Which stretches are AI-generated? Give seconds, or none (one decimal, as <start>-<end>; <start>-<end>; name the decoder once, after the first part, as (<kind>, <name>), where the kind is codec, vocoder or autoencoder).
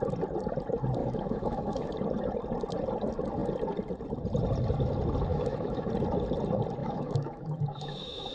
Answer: 1.0-1.9 (autoencoder, DAC-VAE); 5.3-5.9; 6.8-8.3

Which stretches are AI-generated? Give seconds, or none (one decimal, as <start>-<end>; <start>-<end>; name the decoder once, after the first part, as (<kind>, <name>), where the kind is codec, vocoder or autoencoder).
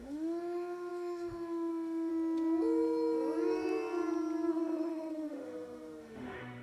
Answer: 0.0-2.1 (autoencoder, DAC-VAE); 4.5-6.6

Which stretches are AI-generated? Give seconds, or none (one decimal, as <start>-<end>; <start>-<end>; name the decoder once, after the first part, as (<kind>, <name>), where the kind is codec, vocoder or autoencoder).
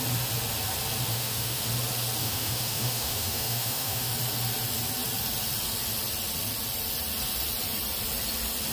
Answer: 1.1-1.6 (autoencoder, DAC-VAE); 2.2-4.1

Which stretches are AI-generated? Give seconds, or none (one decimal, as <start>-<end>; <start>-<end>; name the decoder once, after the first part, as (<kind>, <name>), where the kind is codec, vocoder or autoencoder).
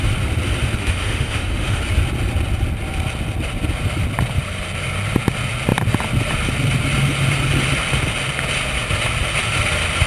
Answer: 0.8-1.8 (autoencoder, DAC-VAE)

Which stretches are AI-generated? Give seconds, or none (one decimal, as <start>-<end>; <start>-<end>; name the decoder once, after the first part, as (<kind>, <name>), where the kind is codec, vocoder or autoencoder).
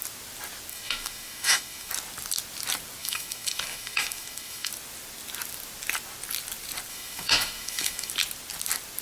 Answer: 0.7-1.9 (autoencoder, DAC-VAE); 3.0-4.7; 6.9-8.1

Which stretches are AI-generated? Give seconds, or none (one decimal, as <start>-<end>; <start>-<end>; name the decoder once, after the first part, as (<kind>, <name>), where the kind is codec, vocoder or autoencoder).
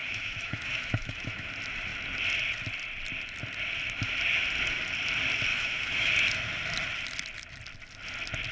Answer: 0.0-1.5 (autoencoder, DAC-VAE); 5.5-6.1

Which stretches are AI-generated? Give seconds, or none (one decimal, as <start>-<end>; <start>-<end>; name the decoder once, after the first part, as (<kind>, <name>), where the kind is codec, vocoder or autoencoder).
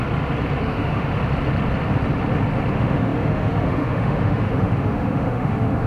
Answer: 0.6-1.1 (autoencoder, DAC-VAE); 2.7-5.9